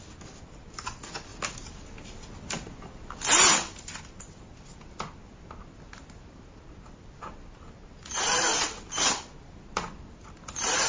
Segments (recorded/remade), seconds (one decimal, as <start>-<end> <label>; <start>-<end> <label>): 0.0-10.9 recorded